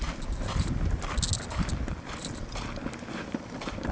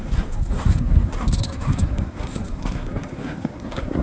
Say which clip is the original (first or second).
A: first